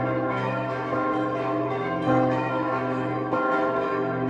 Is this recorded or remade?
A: remade